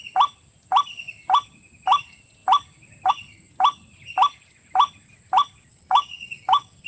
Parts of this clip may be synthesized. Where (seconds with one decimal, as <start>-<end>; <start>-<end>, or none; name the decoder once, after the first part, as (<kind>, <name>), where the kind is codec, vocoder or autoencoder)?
5.7-6.9 (codec, DAC)